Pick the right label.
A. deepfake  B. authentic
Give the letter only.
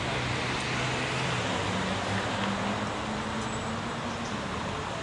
B